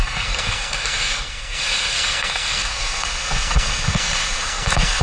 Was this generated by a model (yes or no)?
yes